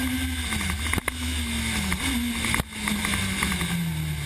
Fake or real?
real